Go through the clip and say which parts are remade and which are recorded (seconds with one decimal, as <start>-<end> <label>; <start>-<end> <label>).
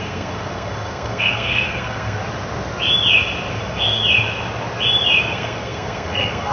0.0-2.2 remade; 2.2-3.5 recorded; 3.5-4.0 remade; 4.0-5.2 recorded; 5.2-6.5 remade